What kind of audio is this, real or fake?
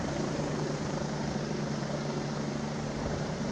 fake